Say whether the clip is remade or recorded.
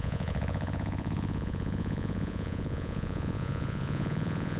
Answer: remade